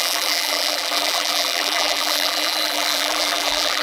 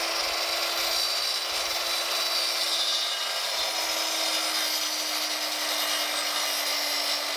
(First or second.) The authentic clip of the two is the second